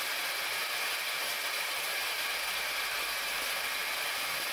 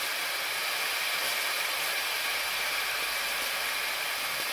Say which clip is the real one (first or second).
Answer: first